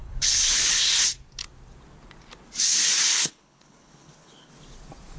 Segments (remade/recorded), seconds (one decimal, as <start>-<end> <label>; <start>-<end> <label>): 0.0-0.8 remade; 0.8-3.1 recorded; 3.1-4.5 remade; 4.5-5.2 recorded

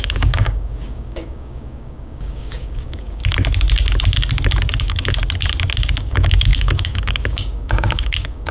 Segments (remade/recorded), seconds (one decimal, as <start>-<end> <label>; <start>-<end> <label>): 0.0-3.2 remade; 3.2-4.8 recorded; 4.8-5.2 remade; 5.2-5.9 recorded; 5.9-8.5 remade